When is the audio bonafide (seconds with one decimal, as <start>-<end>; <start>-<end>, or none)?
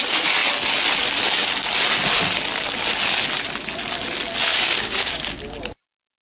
0.0-4.5; 5.4-6.2